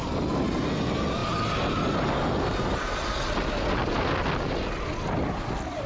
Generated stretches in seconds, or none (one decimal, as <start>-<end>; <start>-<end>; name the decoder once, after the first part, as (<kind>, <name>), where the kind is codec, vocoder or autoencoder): none